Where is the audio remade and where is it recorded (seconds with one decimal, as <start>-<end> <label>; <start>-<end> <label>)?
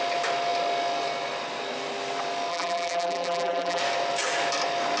0.0-2.5 recorded; 2.5-3.8 remade; 3.8-5.0 recorded